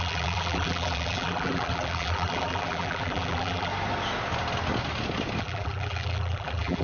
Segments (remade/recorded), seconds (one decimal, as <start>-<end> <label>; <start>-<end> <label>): 0.0-3.7 remade; 3.7-5.4 recorded; 5.4-6.8 remade